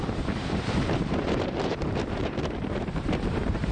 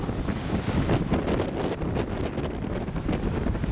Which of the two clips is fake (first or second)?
first